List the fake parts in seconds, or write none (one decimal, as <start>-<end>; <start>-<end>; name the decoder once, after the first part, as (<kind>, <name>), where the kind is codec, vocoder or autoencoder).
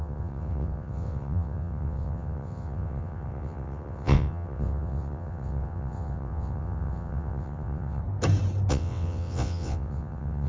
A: 0.0-8.0 (vocoder, WaveNeXt); 8.7-10.5